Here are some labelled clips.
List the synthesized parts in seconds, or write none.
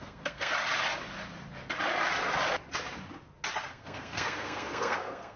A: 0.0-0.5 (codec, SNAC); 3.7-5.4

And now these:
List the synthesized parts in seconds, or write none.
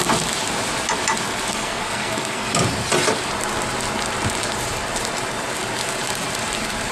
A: 1.5-2.5 (codec, SNAC)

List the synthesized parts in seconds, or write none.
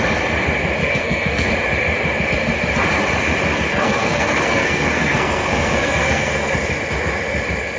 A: 0.8-1.5 (codec, SNAC); 3.7-6.5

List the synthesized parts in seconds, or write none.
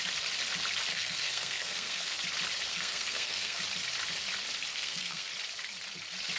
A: 0.9-2.2 (codec, SNAC); 2.7-3.6; 4.7-5.3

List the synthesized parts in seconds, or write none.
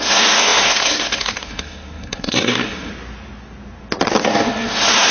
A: 0.0-2.9 (codec, SNAC); 4.2-5.1